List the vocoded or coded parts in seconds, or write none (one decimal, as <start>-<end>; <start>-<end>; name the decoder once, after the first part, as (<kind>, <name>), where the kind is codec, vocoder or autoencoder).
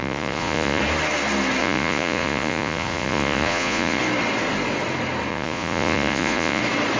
0.0-0.8 (vocoder, Vocos); 1.6-4.0; 5.3-6.6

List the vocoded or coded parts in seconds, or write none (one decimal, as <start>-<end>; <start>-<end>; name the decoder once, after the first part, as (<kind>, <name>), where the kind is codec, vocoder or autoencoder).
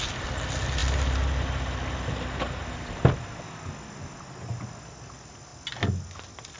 none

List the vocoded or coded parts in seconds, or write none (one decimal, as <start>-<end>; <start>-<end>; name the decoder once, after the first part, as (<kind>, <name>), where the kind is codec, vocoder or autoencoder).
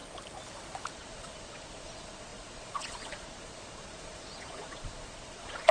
0.9-5.7 (vocoder, Vocos)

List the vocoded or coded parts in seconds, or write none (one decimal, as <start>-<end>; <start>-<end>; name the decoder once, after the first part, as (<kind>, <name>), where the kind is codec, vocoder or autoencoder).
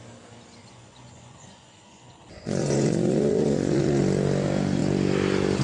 0.6-4.0 (vocoder, Vocos)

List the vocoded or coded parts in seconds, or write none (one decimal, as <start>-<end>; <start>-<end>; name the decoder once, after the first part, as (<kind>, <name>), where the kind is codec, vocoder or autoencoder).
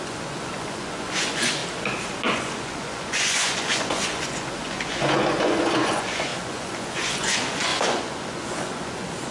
0.0-1.6 (vocoder, Vocos); 2.3-9.3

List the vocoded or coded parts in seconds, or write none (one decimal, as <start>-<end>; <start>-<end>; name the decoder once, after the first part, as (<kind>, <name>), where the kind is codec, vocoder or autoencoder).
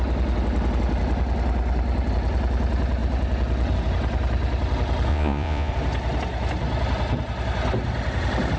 5.1-5.7 (vocoder, Vocos)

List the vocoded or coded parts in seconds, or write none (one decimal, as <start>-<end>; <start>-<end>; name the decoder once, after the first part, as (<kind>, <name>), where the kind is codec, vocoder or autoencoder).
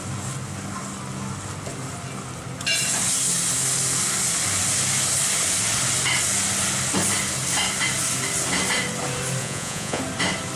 9.4-10.0 (vocoder, Vocos)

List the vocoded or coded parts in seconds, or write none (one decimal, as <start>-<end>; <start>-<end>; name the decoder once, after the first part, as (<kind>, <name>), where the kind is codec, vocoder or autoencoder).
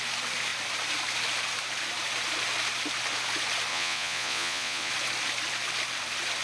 3.7-4.9 (vocoder, Vocos)